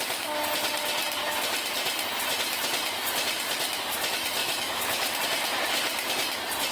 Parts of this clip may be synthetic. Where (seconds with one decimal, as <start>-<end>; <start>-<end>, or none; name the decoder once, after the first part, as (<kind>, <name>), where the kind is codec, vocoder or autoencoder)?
4.4-5.2 (autoencoder, DAC-VAE)